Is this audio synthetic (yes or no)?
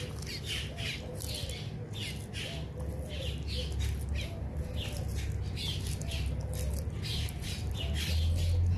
no